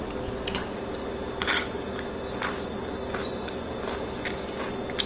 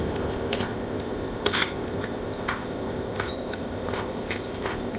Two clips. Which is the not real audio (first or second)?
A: second